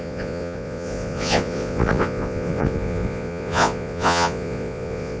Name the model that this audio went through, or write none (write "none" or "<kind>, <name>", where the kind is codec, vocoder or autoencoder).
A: vocoder, Vocos